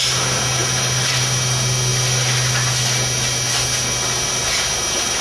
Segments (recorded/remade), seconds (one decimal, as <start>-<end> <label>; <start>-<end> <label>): 0.0-5.2 recorded